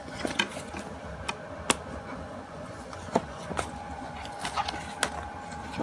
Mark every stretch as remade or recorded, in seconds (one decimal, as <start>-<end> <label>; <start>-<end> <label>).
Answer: 0.0-0.7 remade; 0.7-1.9 recorded; 1.9-4.7 remade; 4.7-5.8 recorded